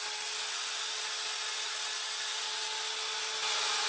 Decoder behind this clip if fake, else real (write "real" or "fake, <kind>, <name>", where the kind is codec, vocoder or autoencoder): real